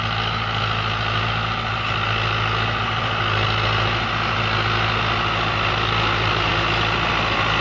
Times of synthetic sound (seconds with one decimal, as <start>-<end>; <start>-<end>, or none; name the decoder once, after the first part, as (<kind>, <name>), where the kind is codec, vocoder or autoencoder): none